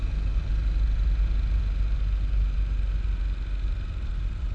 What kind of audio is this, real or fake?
real